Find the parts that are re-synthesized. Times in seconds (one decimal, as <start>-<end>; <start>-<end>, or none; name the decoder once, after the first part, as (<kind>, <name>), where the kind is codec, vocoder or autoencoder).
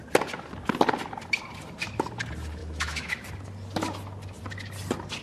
2.6-3.1 (autoencoder, DAC-VAE)